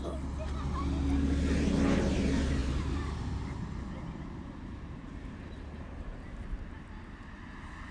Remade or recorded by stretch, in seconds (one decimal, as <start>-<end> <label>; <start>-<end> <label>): 0.0-2.6 recorded; 2.6-7.3 remade; 7.3-7.9 recorded